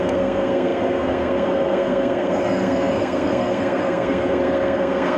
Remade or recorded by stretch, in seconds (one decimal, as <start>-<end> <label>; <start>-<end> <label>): 0.0-5.2 remade